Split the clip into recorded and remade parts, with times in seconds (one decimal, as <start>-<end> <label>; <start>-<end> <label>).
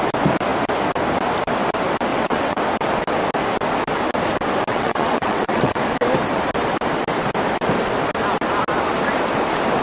0.0-2.1 recorded; 2.1-2.6 remade; 2.6-4.7 recorded; 4.7-5.8 remade; 5.8-9.8 recorded